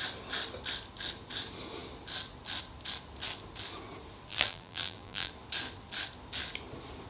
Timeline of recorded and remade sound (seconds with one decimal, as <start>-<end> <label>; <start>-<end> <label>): 0.0-4.3 recorded; 4.3-5.3 remade; 5.3-7.1 recorded